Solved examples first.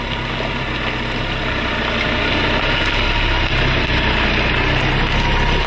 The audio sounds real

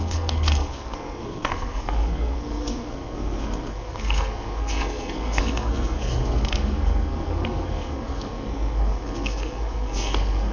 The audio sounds fake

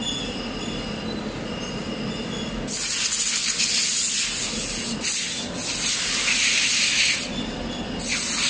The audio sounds real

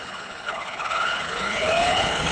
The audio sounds fake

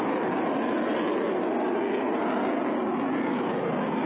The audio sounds real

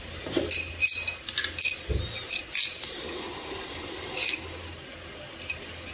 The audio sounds real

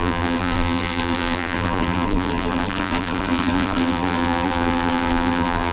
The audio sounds fake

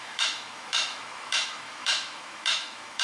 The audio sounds fake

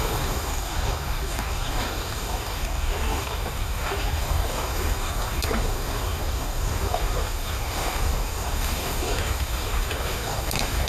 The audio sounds fake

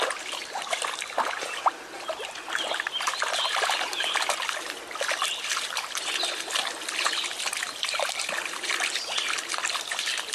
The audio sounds real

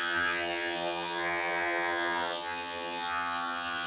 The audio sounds fake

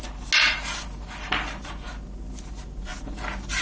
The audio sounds real